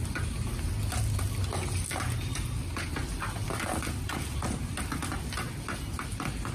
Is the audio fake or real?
real